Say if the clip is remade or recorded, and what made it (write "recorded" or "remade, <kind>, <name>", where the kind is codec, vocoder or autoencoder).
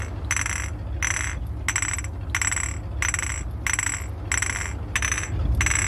recorded